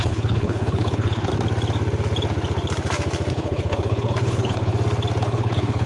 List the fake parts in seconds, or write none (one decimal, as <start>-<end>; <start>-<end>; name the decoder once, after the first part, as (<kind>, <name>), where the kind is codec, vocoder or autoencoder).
0.0-1.3 (codec, HILCodec); 3.3-4.7; 5.2-5.9